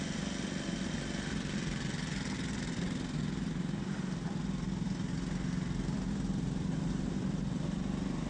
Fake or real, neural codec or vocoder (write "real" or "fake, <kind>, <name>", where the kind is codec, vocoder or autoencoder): fake, vocoder, BigVGAN v2